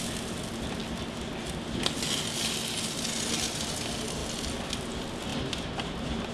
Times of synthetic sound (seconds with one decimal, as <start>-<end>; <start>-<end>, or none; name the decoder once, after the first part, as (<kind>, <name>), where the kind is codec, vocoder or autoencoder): none